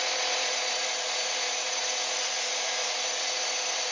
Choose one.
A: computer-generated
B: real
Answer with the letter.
A